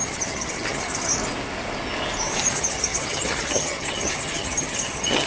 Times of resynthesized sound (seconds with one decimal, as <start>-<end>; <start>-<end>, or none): 0.0-1.1; 2.5-5.3